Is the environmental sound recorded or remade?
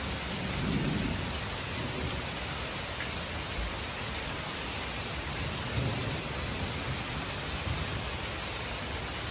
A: recorded